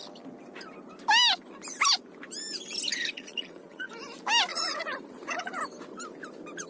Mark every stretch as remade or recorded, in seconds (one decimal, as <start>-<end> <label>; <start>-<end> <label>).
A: 0.0-2.9 recorded; 2.9-3.9 remade; 3.9-4.5 recorded; 4.5-5.6 remade; 5.6-6.7 recorded